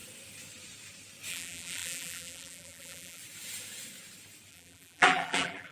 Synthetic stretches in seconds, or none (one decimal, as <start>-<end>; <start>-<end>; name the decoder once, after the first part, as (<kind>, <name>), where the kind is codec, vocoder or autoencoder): 1.3-3.2 (vocoder, BigVGAN v2); 4.5-5.7